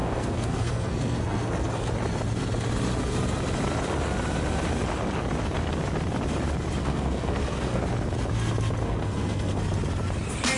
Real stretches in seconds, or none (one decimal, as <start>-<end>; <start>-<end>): 1.9-6.8; 7.8-8.8; 9.6-10.6